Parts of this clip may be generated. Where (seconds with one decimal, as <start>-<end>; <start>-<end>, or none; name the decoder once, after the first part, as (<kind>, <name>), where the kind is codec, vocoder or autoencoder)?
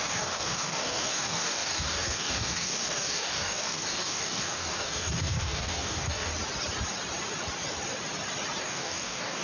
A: 0.0-6.3 (codec, DAC); 8.6-9.4